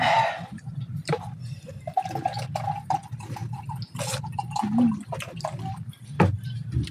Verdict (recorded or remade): recorded